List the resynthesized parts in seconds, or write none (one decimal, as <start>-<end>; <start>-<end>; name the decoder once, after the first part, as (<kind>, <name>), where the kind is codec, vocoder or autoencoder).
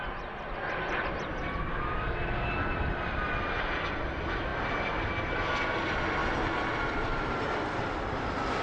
none